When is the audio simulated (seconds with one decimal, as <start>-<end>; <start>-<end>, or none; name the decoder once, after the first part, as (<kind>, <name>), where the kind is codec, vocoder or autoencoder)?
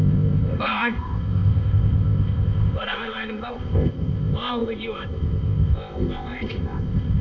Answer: 0.0-7.2 (codec, ZipCodec)